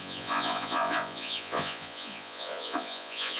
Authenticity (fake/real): fake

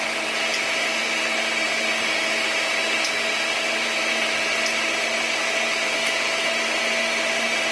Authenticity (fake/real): real